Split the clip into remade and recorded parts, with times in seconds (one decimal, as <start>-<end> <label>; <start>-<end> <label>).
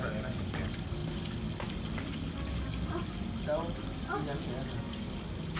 0.0-5.6 recorded